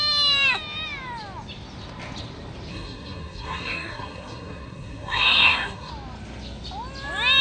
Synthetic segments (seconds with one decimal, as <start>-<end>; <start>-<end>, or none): 2.7-5.9

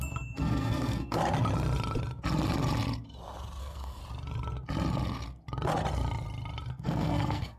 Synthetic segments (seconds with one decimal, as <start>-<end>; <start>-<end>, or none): 0.0-1.2; 3.6-4.0; 6.7-7.6